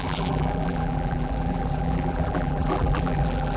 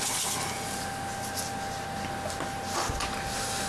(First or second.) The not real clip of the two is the first